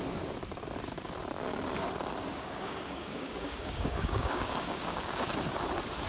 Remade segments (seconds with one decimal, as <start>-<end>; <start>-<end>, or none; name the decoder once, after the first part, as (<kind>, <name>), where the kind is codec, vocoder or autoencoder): 2.3-5.3 (codec, DAC)